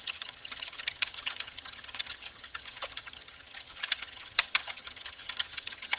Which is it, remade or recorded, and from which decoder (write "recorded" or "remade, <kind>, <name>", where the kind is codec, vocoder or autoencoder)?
remade, vocoder, HiFi-GAN